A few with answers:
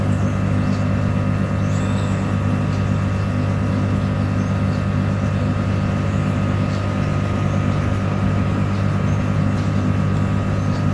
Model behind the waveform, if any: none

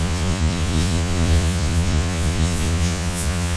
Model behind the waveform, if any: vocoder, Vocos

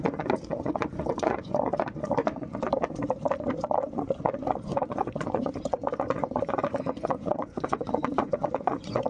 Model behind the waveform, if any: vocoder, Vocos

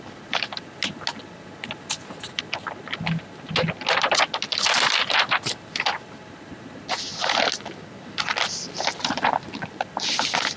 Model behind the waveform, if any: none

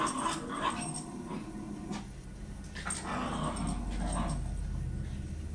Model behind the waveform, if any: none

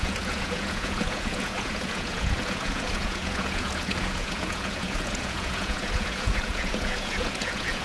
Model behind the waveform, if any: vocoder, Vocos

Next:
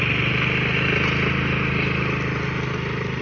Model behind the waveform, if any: none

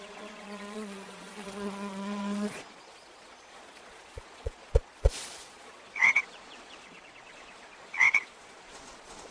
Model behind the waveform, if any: vocoder, Vocos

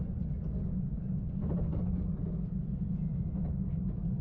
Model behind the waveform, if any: none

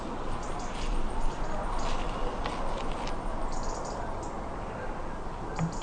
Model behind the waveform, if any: none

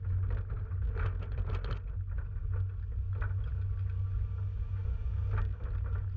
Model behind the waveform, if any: none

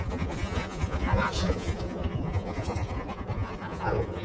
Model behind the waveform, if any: vocoder, Vocos